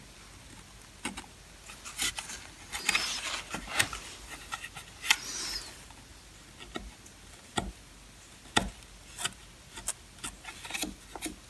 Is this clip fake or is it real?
real